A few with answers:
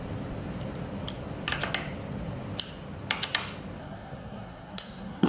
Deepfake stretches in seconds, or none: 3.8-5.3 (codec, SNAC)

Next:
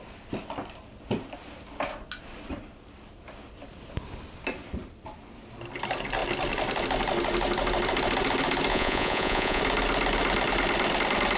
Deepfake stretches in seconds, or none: 8.7-9.6 (vocoder, Vocos)